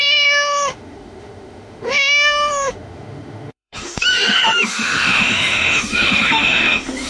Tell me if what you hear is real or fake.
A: fake